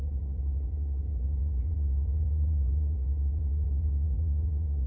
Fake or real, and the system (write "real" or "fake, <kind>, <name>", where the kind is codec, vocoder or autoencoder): fake, vocoder, Vocos